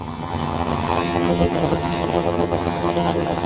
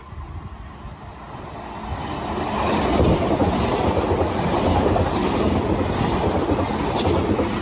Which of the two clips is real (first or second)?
second